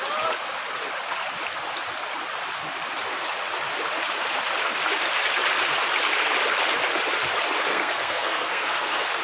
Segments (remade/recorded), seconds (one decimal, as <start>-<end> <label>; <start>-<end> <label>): 0.0-7.7 recorded; 7.7-9.2 remade